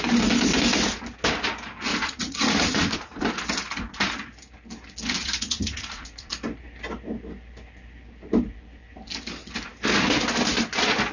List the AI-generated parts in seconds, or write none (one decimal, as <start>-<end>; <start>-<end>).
1.9-3.2; 5.2-6.3